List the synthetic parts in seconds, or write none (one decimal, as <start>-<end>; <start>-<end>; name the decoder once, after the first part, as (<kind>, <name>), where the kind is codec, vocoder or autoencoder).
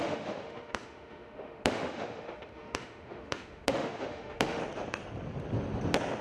0.0-4.6 (autoencoder, DAC-VAE)